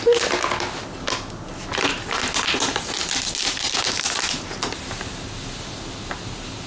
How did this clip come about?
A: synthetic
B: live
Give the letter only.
B